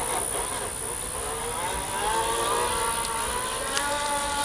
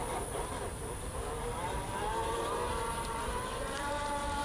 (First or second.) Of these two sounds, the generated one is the second